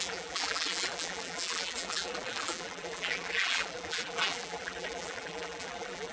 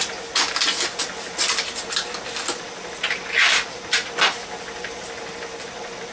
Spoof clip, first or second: first